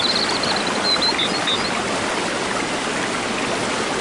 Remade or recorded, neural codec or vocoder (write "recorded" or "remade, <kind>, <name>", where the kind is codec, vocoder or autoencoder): recorded